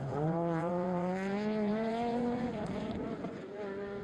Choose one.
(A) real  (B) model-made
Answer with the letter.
B